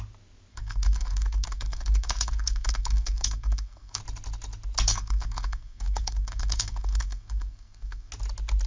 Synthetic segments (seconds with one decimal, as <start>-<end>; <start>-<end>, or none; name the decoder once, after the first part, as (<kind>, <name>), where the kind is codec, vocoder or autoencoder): 0.5-4.0 (codec, SNAC); 4.9-8.1